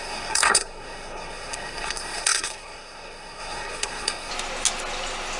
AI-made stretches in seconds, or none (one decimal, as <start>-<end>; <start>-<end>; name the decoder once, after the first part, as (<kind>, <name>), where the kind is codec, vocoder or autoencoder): 0.0-4.3 (codec, SNAC)